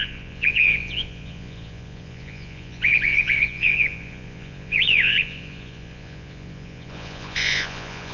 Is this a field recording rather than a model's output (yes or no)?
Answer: no